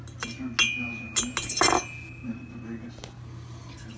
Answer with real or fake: real